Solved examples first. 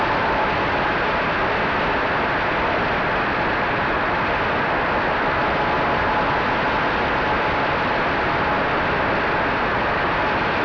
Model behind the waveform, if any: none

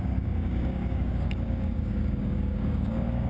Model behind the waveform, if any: codec, DAC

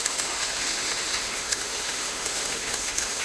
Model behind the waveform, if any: autoencoder, DAC-VAE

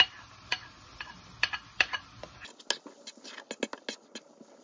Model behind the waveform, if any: none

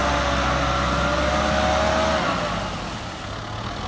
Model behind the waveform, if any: none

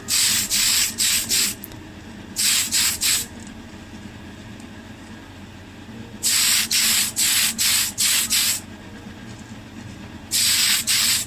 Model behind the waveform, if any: none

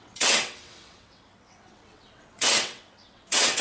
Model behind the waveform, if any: vocoder, WaveNeXt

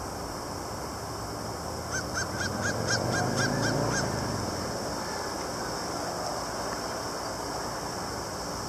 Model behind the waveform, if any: none